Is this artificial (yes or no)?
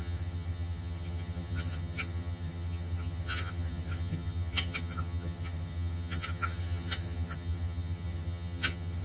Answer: yes